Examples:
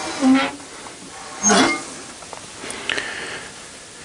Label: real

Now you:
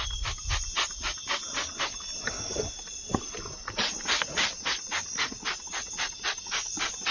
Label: real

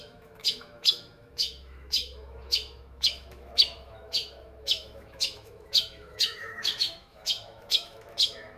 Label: fake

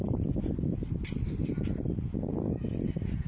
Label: real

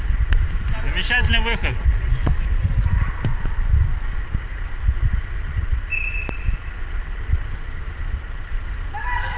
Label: real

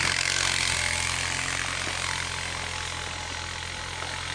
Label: real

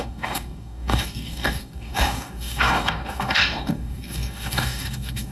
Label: fake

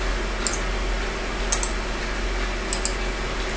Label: real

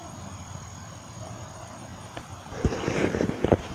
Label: real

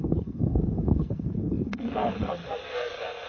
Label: fake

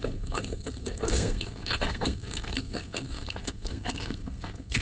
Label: fake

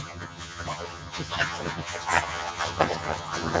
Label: fake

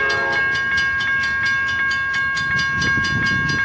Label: real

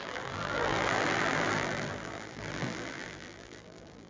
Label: fake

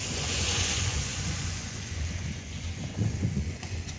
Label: fake